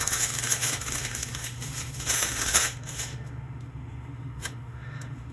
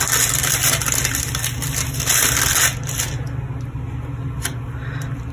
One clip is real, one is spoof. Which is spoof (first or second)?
first